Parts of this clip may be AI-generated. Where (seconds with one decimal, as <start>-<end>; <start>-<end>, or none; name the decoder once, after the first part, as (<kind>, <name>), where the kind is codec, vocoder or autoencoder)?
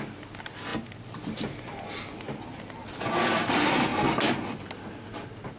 none